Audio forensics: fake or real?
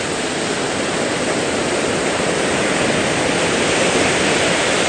fake